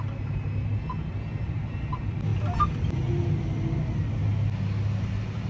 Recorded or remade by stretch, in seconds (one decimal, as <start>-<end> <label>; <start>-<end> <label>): 0.0-5.5 recorded